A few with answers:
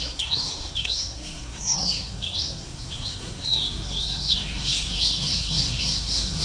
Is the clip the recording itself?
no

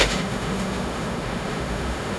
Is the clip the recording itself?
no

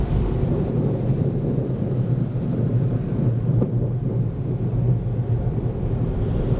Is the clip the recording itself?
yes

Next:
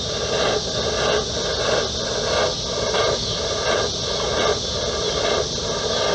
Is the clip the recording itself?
yes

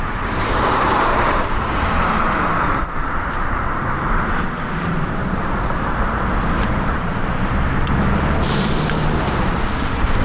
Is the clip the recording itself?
no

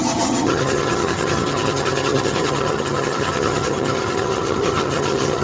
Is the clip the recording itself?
no